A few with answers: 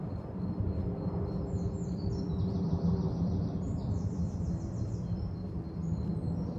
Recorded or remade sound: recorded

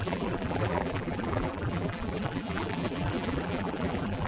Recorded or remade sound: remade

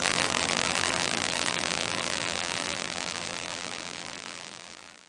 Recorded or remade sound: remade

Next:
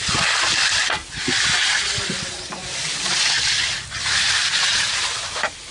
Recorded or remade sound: recorded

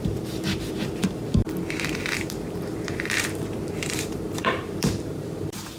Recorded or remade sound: remade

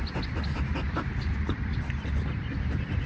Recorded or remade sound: recorded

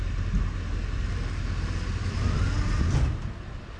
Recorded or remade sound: recorded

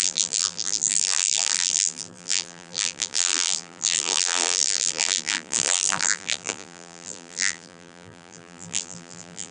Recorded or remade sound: remade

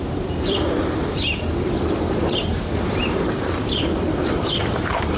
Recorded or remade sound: remade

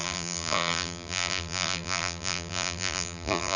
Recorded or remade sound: remade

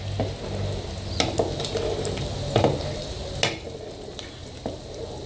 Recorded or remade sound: recorded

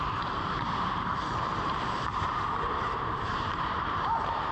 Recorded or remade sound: remade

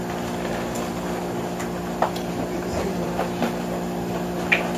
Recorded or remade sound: recorded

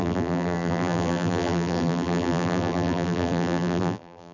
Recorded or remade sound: remade